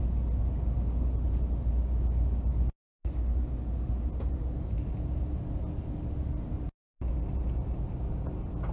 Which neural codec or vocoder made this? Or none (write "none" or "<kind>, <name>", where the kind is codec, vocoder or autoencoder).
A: none